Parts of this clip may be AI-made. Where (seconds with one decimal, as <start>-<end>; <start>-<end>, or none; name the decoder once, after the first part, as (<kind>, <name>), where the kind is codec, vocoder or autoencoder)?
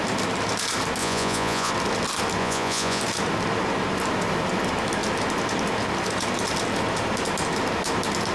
1.0-1.7 (vocoder, Vocos); 2.4-3.0